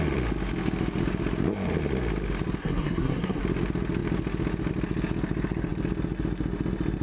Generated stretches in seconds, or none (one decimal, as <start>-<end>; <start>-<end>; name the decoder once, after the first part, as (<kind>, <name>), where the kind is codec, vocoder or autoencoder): 2.6-3.4 (codec, SNAC)